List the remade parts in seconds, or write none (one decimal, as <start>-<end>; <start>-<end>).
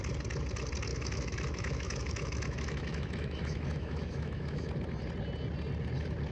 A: 0.9-4.7